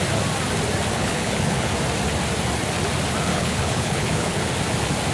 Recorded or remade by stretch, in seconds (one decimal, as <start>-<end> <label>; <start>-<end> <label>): 0.0-0.9 recorded; 0.9-1.7 remade; 1.7-3.3 recorded; 3.3-4.5 remade; 4.5-5.1 recorded